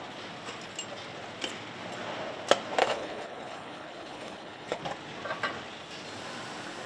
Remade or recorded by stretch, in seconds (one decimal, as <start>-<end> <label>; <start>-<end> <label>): 0.0-2.8 recorded; 2.8-4.8 remade; 4.8-6.9 recorded